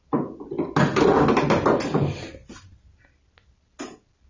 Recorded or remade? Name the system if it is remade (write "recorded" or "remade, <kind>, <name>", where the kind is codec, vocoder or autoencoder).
recorded